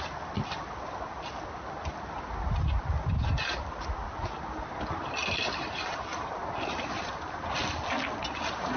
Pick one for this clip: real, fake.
real